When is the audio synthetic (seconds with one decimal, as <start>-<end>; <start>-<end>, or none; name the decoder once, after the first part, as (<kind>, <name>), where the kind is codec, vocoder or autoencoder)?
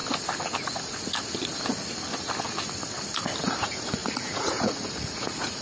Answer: 3.4-5.6 (vocoder, Vocos)